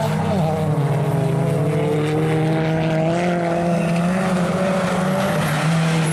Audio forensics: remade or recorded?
recorded